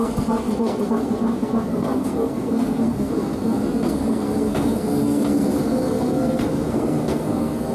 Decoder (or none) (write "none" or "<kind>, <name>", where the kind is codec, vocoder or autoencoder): codec, SNAC